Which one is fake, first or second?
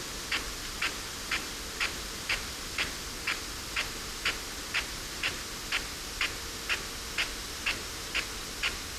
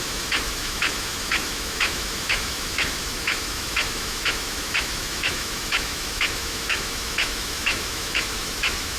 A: second